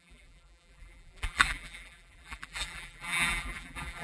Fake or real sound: fake